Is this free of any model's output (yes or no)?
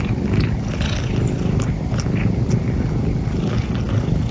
yes